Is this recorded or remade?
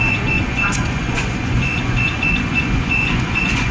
remade